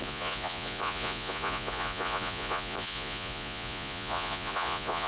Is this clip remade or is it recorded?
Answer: remade